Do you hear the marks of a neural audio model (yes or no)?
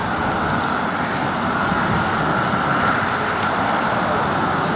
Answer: no